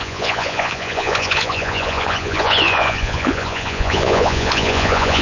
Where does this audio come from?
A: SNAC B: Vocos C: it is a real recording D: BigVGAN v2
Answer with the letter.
B